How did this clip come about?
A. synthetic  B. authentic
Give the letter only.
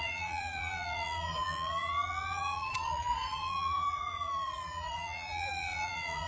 A